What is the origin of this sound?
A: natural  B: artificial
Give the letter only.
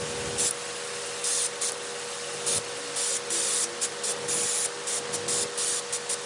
A